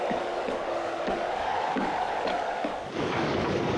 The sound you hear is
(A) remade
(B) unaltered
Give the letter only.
A